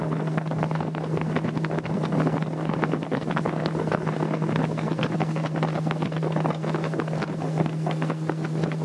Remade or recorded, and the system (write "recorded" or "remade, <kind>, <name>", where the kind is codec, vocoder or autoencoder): remade, codec, SNAC